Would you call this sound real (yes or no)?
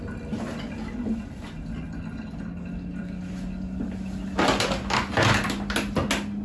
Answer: yes